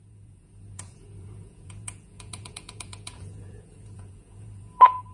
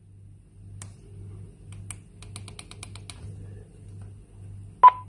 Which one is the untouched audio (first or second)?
second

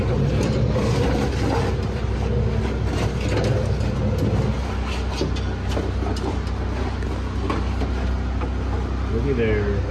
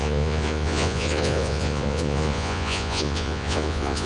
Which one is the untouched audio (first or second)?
first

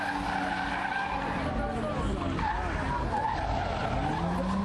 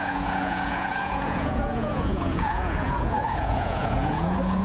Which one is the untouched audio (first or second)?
first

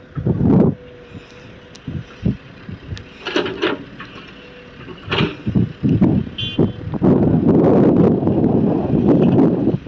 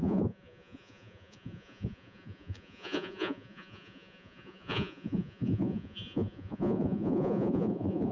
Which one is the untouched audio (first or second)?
first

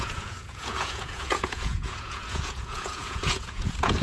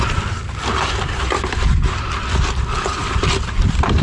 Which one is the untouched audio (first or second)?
second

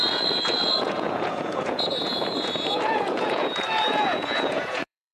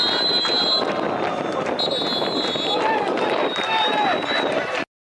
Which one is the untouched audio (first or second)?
second